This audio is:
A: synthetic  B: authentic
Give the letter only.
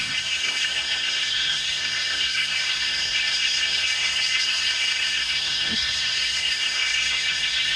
A